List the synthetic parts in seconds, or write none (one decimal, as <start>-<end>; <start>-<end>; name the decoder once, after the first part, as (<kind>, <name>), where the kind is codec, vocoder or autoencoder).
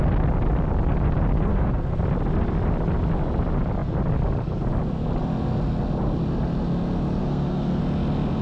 1.5-2.0 (codec, SNAC); 7.2-7.8